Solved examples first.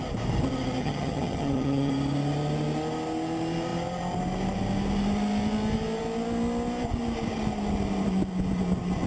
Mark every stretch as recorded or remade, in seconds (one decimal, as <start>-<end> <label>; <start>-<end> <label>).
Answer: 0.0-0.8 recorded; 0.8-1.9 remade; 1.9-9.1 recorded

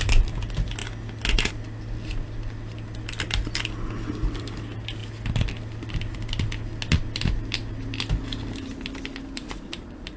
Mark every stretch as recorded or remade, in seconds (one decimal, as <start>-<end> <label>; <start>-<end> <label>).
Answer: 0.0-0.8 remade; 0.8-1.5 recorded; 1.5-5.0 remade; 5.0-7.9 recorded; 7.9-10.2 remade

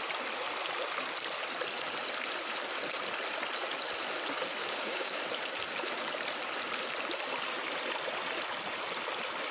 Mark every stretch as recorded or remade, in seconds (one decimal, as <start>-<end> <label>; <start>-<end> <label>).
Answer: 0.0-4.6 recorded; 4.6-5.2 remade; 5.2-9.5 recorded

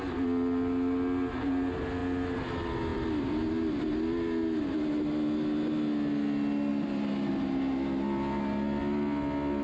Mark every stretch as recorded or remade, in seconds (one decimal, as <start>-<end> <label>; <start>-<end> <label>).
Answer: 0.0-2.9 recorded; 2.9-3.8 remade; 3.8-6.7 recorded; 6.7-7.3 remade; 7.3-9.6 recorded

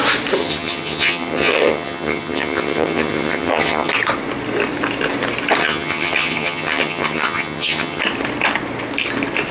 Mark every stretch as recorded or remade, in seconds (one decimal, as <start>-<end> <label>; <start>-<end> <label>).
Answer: 0.0-0.4 recorded; 0.4-3.9 remade; 3.9-5.6 recorded; 5.6-8.0 remade; 8.0-9.5 recorded